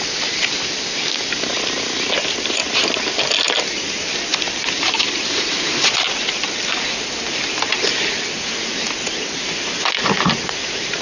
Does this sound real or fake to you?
real